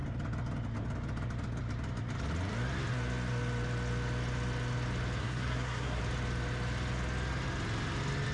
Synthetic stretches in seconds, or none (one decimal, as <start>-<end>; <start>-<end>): 5.2-6.0